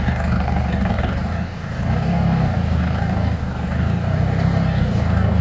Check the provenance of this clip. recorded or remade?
remade